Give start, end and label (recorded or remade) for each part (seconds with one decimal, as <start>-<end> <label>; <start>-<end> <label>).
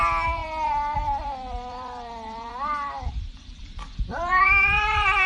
0.0-5.3 remade